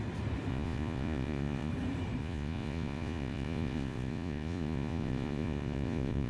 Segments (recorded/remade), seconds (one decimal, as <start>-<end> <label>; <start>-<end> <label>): 0.0-0.5 recorded; 0.5-1.7 remade; 1.7-2.2 recorded; 2.2-6.3 remade

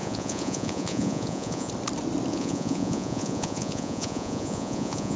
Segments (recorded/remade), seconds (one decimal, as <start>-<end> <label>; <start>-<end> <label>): 0.0-1.7 remade; 1.7-2.3 recorded; 2.3-5.2 remade

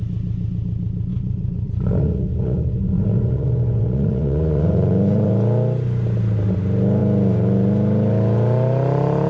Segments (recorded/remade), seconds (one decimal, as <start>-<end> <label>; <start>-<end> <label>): 0.0-1.1 recorded; 1.1-5.3 remade; 5.3-9.3 recorded